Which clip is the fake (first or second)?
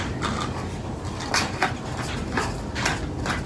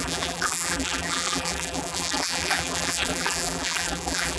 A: second